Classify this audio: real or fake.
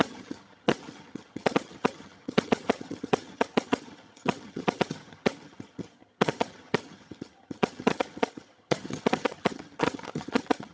fake